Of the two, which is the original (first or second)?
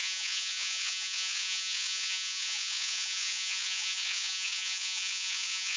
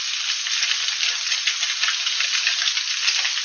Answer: second